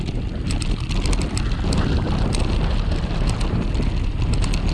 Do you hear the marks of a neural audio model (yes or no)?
no